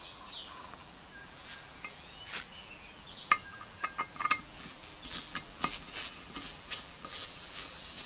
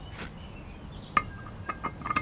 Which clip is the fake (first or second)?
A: first